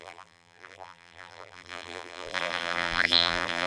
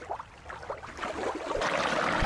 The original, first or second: second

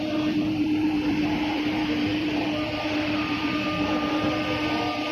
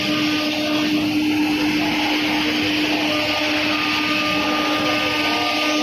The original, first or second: second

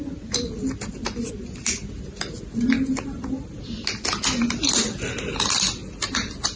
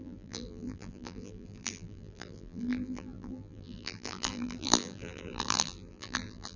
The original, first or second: first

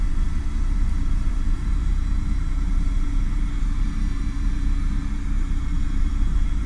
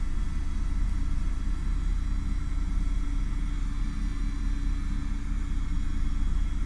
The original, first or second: second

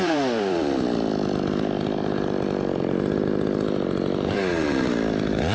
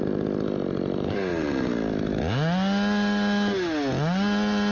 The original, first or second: second